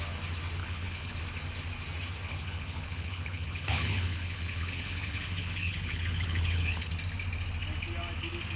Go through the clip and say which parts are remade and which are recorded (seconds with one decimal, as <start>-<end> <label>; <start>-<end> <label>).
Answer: 0.0-0.6 recorded; 0.6-1.2 remade; 1.2-2.3 recorded; 2.3-6.9 remade; 6.9-8.6 recorded